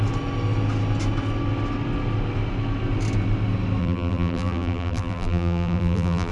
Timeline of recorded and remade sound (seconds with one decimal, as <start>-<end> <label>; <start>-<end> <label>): 0.0-3.8 recorded; 3.8-6.3 remade